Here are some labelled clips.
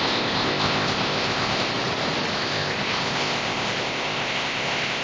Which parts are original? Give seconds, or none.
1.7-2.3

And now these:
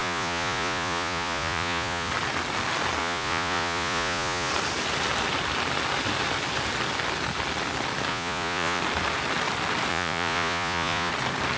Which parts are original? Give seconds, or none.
2.1-3.0; 4.5-8.1; 8.8-9.9; 11.1-11.6